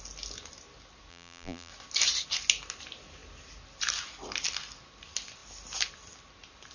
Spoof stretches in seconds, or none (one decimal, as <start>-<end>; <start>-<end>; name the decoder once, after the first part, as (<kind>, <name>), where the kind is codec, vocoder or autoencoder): 1.1-1.7 (vocoder, BigVGAN v2)

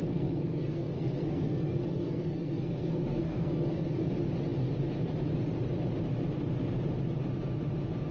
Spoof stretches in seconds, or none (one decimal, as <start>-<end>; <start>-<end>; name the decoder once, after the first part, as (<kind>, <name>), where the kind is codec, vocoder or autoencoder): 0.0-3.8 (codec, SNAC)

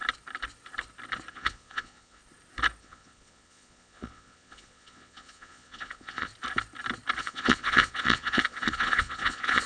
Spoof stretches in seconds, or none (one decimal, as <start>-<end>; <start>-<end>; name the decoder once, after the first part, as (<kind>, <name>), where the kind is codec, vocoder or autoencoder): 1.3-2.2 (vocoder, Vocos); 2.8-6.3; 7.2-9.7

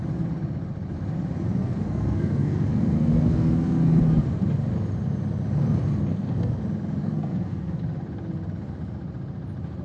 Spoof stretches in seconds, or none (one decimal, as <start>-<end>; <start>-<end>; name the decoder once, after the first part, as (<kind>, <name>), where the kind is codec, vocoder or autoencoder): 1.6-4.0 (codec, SNAC); 6.1-6.6; 7.0-7.8

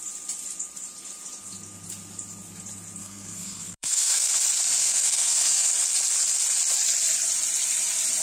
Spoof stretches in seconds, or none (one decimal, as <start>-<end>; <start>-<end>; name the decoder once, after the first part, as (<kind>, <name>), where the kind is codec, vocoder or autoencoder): 3.0-4.3 (codec, SNAC); 4.8-5.7

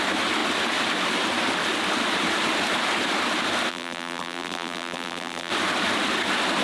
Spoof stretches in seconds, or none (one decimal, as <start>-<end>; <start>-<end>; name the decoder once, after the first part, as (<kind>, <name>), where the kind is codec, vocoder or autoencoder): 3.7-5.5 (vocoder, BigVGAN v2)

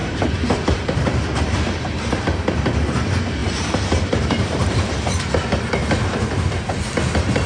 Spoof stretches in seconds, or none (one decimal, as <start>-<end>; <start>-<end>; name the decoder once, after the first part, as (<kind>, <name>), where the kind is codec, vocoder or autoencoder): 0.0-2.2 (vocoder, BigVGAN v2); 3.4-4.9